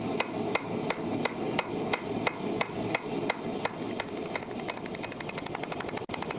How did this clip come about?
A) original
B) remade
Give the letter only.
A